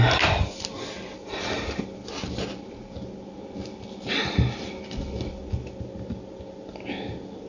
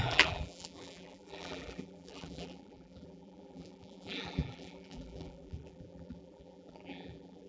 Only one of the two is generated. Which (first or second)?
second